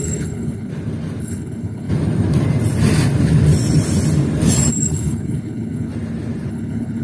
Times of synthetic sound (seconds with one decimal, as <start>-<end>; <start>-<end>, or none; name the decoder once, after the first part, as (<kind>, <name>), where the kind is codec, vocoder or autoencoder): 0.0-0.7 (codec, HILCodec); 1.2-1.9; 4.7-5.9; 6.5-7.0